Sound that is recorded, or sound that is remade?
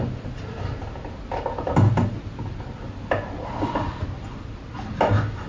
recorded